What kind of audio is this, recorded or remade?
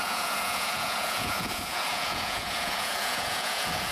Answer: remade